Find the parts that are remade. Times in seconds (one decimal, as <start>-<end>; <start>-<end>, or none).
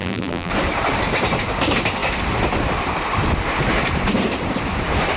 0.0-0.5